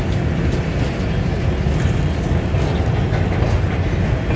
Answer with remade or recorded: recorded